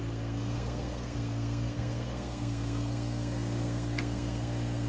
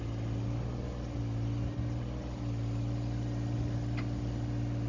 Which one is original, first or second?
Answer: second